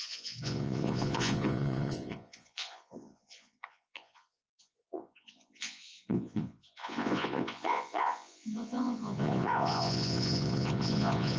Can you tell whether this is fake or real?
fake